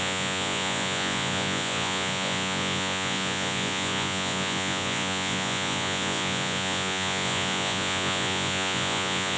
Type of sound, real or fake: fake